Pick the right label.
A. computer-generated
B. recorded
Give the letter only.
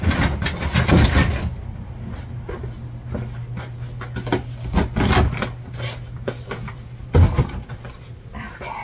B